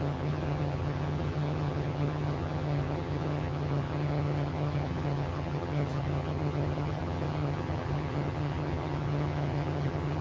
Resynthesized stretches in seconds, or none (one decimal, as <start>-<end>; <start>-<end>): 0.0-10.2